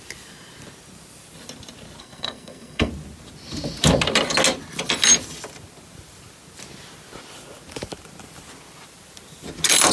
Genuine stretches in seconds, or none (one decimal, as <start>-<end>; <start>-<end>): 0.0-2.0; 2.9-9.9

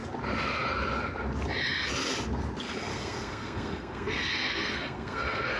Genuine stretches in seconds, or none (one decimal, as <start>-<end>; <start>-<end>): 0.0-2.9

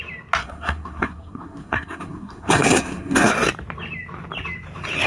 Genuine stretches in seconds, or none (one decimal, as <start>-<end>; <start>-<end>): 0.0-0.4; 3.3-5.1

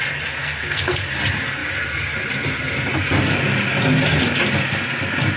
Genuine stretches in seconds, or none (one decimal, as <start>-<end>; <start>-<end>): 0.0-0.4; 1.1-5.4